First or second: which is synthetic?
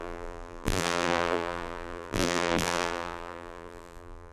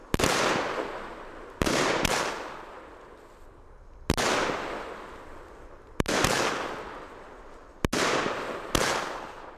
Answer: first